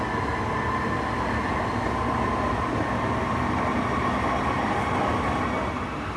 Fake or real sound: real